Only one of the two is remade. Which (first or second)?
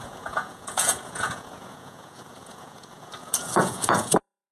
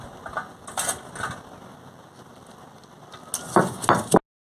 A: first